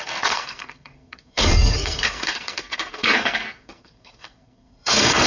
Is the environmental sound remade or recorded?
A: remade